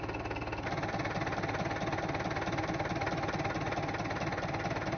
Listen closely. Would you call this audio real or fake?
real